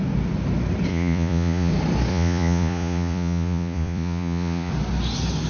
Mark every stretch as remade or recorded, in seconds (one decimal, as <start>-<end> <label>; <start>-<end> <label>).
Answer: 0.0-0.9 recorded; 0.9-1.7 remade; 1.7-2.1 recorded; 2.1-4.7 remade; 4.7-5.5 recorded

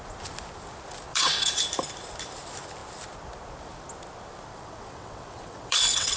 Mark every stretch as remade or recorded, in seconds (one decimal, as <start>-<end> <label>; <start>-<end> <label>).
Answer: 0.0-1.1 recorded; 1.1-1.6 remade; 1.6-4.5 recorded; 4.5-6.2 remade

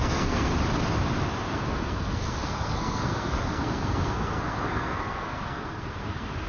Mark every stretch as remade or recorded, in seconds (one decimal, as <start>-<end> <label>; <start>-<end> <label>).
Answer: 0.0-0.5 remade; 0.5-1.5 recorded; 1.5-6.5 remade

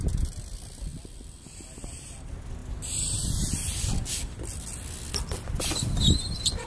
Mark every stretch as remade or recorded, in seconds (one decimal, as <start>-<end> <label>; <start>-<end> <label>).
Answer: 0.0-6.7 recorded

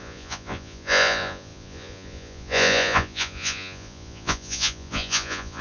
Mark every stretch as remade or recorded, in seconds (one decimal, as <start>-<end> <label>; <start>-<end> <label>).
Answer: 0.0-5.6 remade

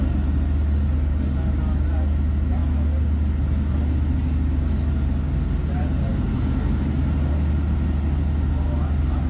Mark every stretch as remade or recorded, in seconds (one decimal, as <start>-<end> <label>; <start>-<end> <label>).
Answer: 0.0-9.3 recorded

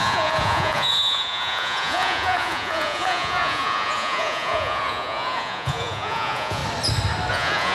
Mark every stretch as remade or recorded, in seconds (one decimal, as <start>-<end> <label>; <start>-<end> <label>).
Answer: 0.0-6.6 remade; 6.6-7.3 recorded; 7.3-7.7 remade

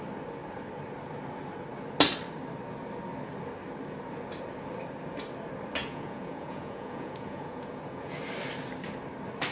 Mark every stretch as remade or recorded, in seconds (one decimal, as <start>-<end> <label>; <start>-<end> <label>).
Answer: 0.0-5.8 recorded; 5.8-8.2 remade; 8.2-9.5 recorded